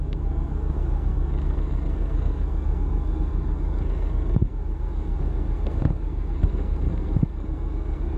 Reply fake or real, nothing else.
fake